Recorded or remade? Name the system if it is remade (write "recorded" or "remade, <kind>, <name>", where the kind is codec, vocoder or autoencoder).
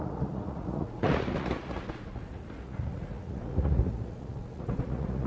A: remade, vocoder, Vocos